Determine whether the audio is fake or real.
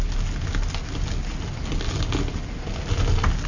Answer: real